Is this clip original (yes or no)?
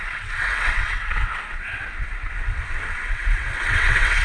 no